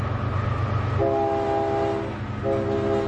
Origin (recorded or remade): recorded